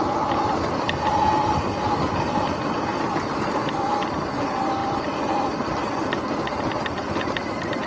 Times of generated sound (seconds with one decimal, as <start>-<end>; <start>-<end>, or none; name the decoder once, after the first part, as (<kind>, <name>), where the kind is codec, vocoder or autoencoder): none